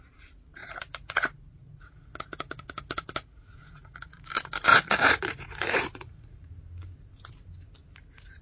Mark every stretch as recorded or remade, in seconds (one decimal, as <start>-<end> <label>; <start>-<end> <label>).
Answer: 0.0-0.6 recorded; 0.6-4.2 remade; 4.2-4.7 recorded; 4.7-6.5 remade; 6.5-8.4 recorded